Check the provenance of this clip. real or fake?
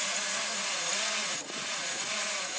fake